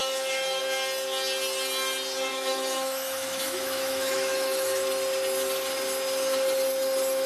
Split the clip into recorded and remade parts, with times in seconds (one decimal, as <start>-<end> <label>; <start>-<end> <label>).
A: 0.0-0.6 remade; 0.6-2.3 recorded; 2.3-4.8 remade; 4.8-7.3 recorded